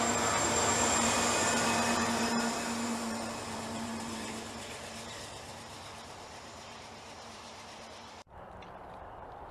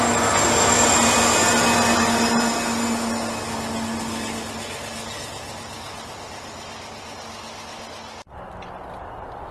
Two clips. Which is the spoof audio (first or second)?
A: first